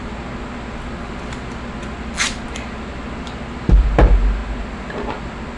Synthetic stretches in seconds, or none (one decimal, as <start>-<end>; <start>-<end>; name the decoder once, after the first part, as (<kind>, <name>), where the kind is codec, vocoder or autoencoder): none